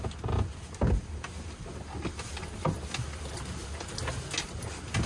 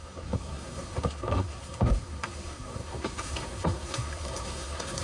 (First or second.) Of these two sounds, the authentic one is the first